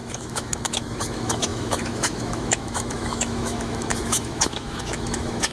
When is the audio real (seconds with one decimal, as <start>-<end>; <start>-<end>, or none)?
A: none